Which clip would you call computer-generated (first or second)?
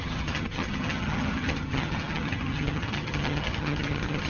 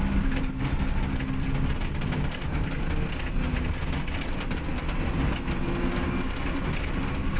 first